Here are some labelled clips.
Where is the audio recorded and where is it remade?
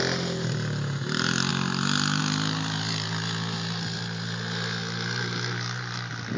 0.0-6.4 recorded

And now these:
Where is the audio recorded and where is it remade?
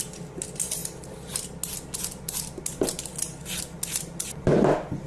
0.0-5.1 recorded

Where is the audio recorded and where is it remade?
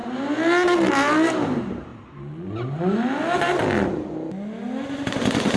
0.0-5.6 recorded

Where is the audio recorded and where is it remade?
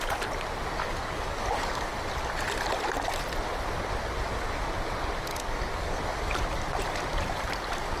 0.0-0.8 recorded; 0.8-1.9 remade; 1.9-5.3 recorded; 5.3-6.0 remade; 6.0-8.0 recorded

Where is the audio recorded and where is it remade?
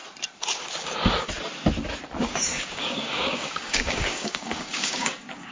0.0-2.2 recorded; 2.2-5.5 remade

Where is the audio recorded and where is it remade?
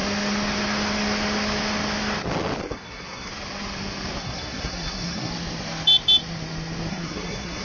0.0-2.6 recorded; 2.6-3.3 remade; 3.3-4.2 recorded; 4.2-5.3 remade; 5.3-6.9 recorded; 6.9-7.6 remade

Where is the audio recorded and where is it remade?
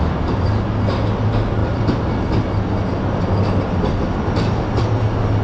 0.0-5.4 recorded